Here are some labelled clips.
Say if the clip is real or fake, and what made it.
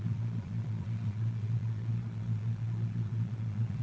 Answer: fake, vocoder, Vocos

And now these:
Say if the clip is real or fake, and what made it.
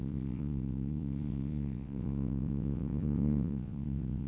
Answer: fake, vocoder, WaveNeXt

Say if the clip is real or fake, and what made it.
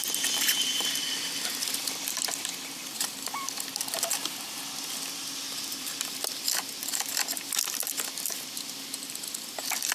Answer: fake, vocoder, BigVGAN v2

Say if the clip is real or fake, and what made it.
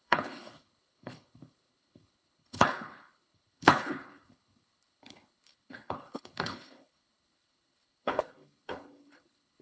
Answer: fake, codec, HILCodec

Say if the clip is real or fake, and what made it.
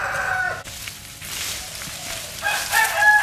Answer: real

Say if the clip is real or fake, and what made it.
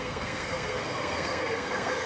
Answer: fake, codec, SNAC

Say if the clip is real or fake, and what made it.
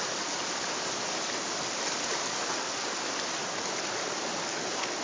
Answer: real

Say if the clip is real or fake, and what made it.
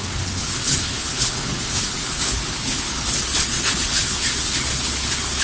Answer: fake, codec, HILCodec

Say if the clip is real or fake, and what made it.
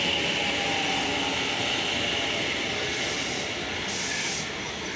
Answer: real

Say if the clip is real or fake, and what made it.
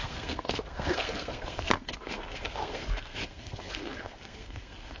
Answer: fake, codec, SNAC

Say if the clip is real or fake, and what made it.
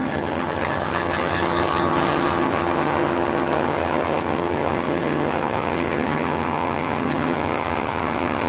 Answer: fake, vocoder, HiFi-GAN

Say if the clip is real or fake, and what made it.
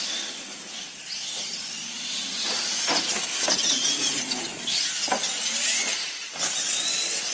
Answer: real